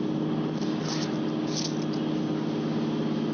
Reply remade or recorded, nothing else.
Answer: recorded